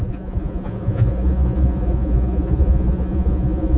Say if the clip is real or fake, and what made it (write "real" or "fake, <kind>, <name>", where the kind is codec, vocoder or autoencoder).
fake, vocoder, Vocos